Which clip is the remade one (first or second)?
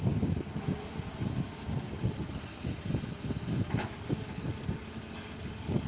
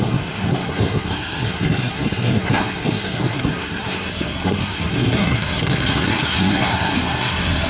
second